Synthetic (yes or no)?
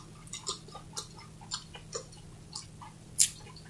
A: no